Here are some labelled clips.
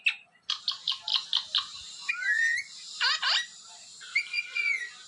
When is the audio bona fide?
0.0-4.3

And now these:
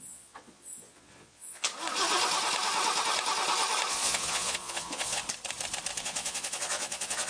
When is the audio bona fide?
1.7-3.9; 5.2-6.0